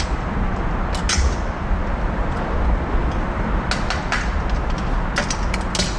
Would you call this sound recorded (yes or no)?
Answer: yes